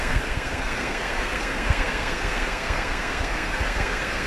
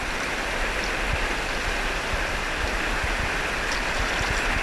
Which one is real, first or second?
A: second